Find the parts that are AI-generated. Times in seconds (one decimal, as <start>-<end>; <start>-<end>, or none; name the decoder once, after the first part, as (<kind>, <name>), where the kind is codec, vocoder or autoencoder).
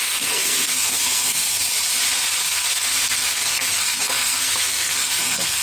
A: 0.0-1.6 (codec, SNAC); 2.4-5.6